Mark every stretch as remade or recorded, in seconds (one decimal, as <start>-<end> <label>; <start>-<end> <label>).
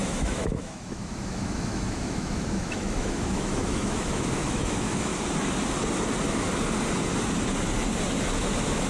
0.0-5.1 remade; 5.1-8.9 recorded